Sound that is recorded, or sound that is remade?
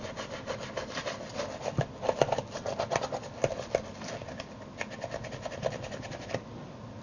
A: recorded